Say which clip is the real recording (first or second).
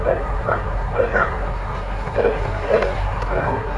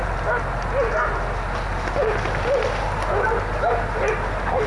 second